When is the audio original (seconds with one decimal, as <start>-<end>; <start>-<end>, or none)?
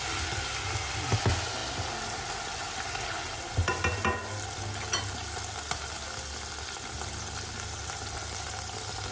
0.0-9.1